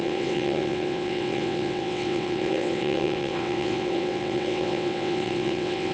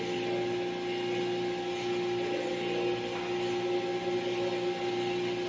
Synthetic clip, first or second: first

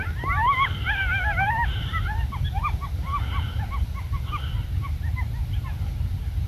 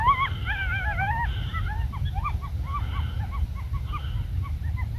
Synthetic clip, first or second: first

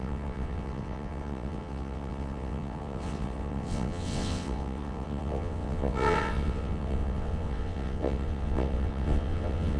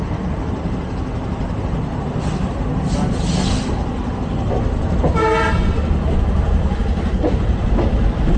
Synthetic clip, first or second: first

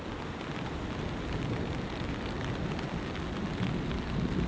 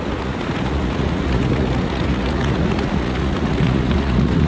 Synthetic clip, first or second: second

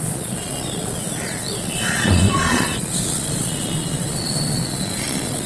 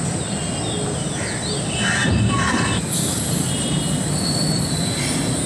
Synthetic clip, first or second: first